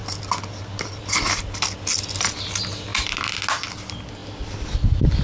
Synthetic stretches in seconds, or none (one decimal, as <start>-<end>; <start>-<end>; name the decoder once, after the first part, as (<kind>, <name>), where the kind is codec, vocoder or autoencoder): 0.0-1.0 (vocoder, BigVGAN v2); 4.2-5.2